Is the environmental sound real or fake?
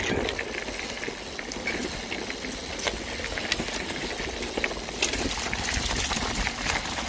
real